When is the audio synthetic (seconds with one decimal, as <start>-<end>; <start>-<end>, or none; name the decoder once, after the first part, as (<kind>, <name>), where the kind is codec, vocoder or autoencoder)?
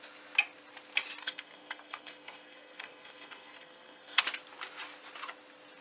1.2-4.2 (codec, SNAC)